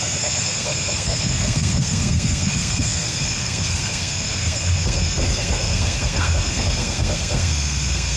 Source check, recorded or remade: remade